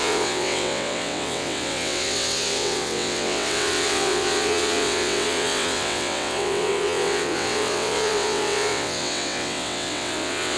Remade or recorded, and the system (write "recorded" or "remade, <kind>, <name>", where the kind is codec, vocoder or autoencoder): remade, vocoder, WaveNeXt